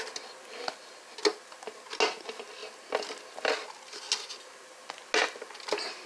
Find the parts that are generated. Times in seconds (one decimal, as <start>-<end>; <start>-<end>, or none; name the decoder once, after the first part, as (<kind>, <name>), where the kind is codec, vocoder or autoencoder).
none